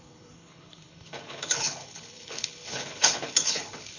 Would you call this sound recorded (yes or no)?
no